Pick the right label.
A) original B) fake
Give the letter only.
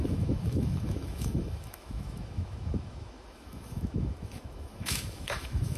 B